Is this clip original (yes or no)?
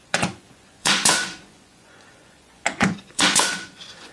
no